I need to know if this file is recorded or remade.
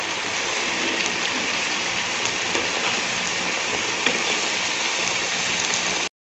recorded